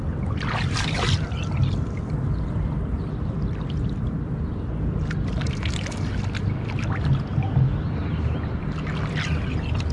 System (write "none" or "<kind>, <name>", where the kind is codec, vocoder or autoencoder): none